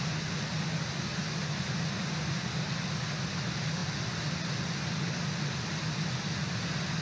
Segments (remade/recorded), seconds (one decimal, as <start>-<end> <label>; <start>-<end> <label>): 0.0-1.1 recorded; 1.1-2.5 remade; 2.5-7.0 recorded

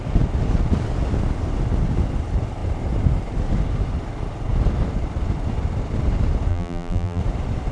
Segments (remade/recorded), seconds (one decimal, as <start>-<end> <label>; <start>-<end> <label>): 0.0-6.5 recorded; 6.5-7.2 remade; 7.2-7.7 recorded